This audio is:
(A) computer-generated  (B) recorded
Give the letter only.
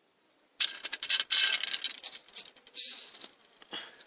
B